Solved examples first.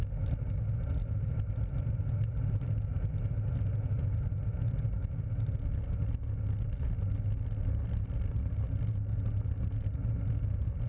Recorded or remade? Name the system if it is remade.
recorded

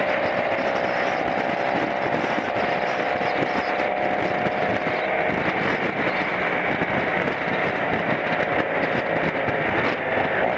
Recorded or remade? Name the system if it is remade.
recorded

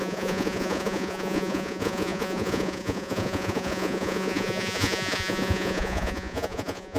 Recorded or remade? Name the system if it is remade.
remade, vocoder, Vocos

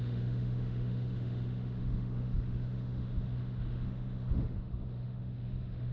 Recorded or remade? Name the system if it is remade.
remade, autoencoder, DAC-VAE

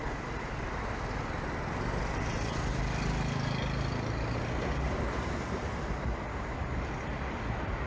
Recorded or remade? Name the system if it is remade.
recorded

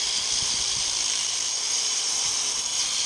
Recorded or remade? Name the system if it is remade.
remade, vocoder, BigVGAN v2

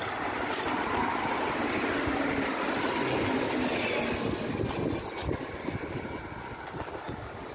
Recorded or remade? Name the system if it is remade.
recorded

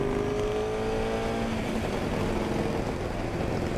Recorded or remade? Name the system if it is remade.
recorded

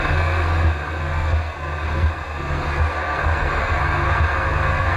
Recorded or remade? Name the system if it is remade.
remade, codec, SNAC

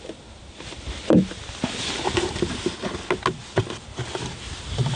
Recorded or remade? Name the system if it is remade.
recorded